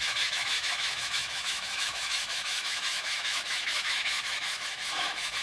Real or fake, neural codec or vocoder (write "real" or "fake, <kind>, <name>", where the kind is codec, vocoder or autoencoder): fake, autoencoder, DAC-VAE